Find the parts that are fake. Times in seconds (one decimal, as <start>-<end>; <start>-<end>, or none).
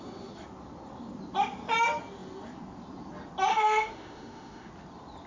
3.5-4.7